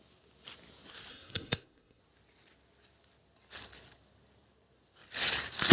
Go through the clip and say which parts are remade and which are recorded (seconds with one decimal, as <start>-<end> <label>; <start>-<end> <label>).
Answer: 0.0-1.1 recorded; 1.1-2.0 remade; 2.0-5.7 recorded